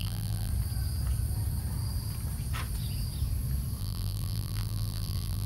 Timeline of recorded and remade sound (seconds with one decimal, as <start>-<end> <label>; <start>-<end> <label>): 0.0-0.5 remade; 0.5-3.8 recorded; 3.8-5.5 remade